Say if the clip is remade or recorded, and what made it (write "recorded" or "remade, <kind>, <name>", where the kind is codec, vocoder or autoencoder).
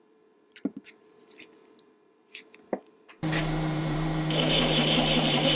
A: remade, vocoder, BigVGAN v2